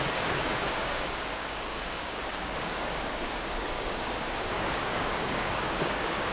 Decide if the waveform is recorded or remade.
remade